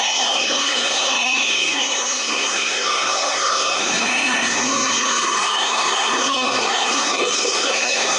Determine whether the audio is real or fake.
fake